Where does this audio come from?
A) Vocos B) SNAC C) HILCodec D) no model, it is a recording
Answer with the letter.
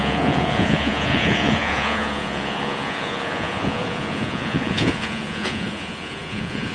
A